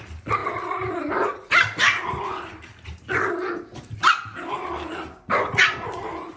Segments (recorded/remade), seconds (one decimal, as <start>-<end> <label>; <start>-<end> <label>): 0.0-0.4 recorded; 0.4-2.2 remade; 2.2-6.4 recorded